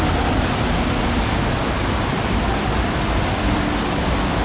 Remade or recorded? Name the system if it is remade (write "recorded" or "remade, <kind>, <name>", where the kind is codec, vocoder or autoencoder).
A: recorded